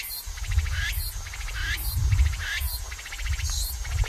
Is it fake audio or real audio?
real